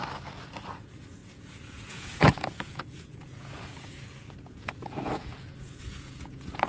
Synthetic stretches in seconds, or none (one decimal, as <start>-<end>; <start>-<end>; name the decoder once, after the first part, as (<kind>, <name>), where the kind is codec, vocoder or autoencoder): 0.7-6.7 (vocoder, Vocos)